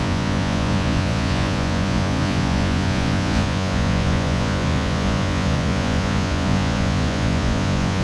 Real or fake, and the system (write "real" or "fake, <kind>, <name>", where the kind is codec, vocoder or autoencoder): fake, vocoder, Vocos